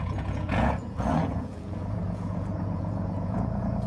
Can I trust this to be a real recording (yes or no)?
no